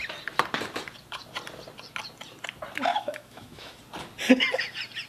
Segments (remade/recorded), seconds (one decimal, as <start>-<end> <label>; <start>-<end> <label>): 0.0-2.9 recorded; 2.9-3.8 remade; 3.8-5.1 recorded